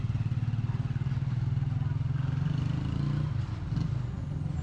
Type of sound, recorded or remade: recorded